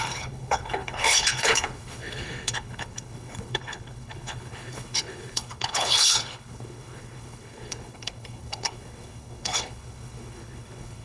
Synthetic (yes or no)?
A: yes